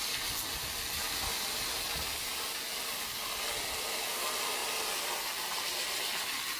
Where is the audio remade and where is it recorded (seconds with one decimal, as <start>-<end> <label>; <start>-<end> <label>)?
0.0-6.6 recorded